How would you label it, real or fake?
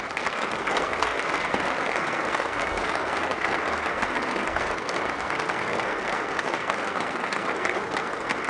fake